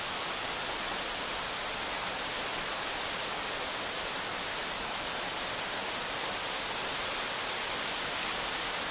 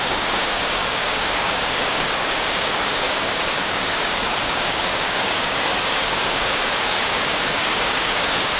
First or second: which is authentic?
first